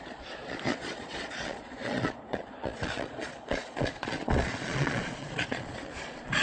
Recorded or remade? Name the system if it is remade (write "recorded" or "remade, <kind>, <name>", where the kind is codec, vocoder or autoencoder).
remade, vocoder, Vocos